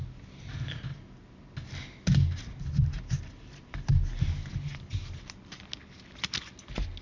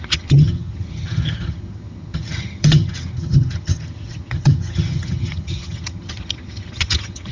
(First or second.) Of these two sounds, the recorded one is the first